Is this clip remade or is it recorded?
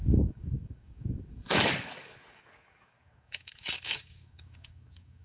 remade